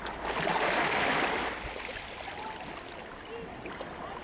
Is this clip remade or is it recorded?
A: recorded